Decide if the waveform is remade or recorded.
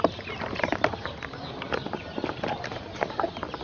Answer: recorded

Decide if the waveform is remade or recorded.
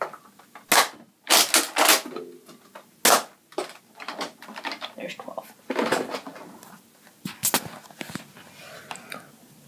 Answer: recorded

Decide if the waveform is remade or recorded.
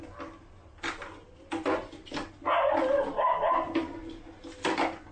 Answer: recorded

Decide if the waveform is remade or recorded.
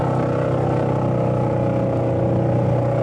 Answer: recorded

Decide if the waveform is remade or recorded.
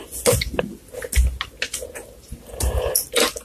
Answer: recorded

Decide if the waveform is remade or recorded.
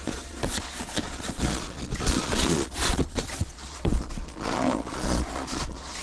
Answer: remade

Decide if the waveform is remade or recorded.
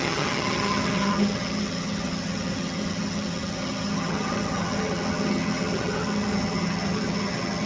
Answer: remade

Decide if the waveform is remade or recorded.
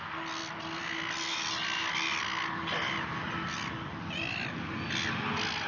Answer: recorded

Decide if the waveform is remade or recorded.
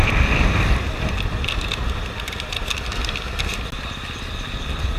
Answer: recorded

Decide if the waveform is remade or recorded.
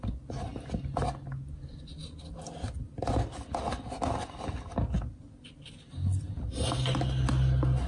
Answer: recorded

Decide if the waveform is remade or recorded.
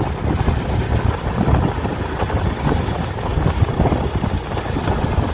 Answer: recorded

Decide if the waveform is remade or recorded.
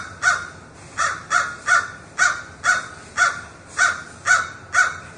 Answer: recorded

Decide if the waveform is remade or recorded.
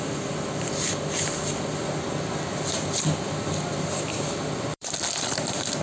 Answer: remade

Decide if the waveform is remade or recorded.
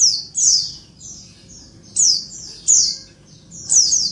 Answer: recorded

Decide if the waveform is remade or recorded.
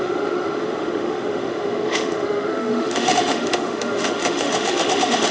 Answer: remade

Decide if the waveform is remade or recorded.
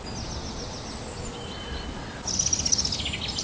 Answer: recorded